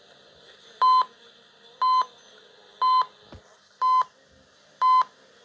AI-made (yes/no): no